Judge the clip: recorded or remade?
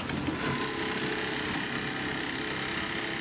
recorded